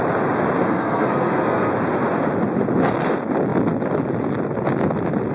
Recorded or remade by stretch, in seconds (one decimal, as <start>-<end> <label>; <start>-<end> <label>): 0.0-0.6 recorded; 0.6-1.7 remade; 1.7-5.3 recorded